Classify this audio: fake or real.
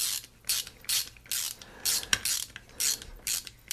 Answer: real